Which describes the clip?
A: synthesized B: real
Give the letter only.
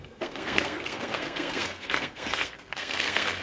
A